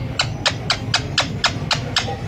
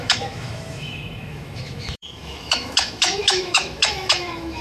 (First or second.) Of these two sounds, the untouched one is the first